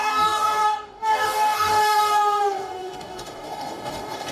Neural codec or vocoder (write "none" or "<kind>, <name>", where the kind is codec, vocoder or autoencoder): codec, DAC